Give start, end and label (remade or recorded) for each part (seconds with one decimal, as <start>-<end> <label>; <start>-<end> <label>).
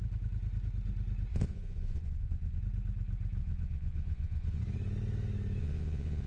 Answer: 0.0-1.3 recorded; 1.3-2.6 remade; 2.6-3.4 recorded; 3.4-4.6 remade; 4.6-5.6 recorded; 5.6-6.3 remade